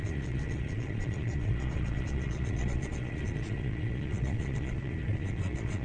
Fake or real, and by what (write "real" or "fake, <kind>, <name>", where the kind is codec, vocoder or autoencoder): fake, vocoder, Vocos